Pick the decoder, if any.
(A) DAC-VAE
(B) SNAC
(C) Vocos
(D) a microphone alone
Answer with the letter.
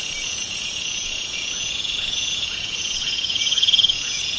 C